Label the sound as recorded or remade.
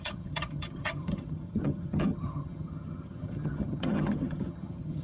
remade